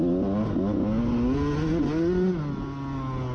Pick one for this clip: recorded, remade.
recorded